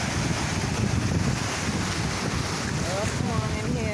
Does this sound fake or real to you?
real